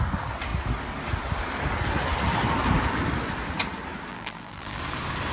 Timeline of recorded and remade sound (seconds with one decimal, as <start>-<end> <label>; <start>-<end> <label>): 0.0-4.1 recorded; 4.1-4.8 remade; 4.8-5.3 recorded